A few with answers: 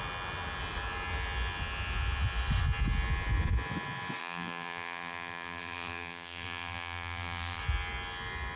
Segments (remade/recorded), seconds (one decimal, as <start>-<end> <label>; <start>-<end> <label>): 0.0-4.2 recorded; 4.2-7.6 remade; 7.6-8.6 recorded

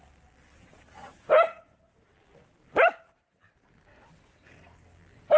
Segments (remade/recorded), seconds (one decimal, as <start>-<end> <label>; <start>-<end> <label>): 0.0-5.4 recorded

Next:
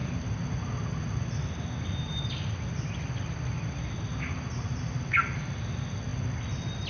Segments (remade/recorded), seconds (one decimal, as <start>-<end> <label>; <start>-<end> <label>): 0.0-6.9 recorded

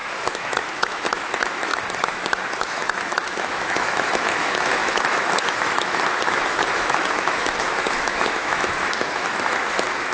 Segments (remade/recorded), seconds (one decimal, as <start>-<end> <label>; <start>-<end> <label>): 0.0-10.1 remade

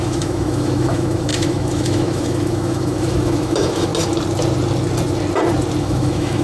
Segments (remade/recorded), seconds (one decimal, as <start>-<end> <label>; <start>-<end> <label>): 0.0-3.9 remade; 3.9-5.8 recorded; 5.8-6.4 remade

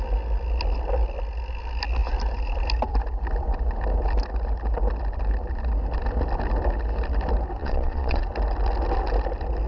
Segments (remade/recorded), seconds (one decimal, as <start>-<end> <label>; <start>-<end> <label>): 0.0-7.6 recorded; 7.6-8.2 remade; 8.2-9.7 recorded